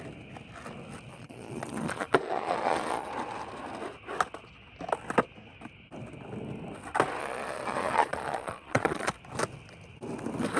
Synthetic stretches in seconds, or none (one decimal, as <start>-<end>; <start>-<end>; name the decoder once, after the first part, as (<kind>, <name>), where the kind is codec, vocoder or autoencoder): 1.1-3.1 (vocoder, Vocos); 7.2-9.1